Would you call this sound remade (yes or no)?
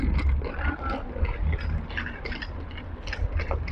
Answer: no